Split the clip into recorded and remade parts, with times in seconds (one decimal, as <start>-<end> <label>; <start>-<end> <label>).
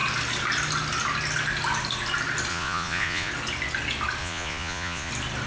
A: 0.0-2.5 recorded; 2.5-3.3 remade; 3.3-4.2 recorded; 4.2-5.1 remade; 5.1-5.5 recorded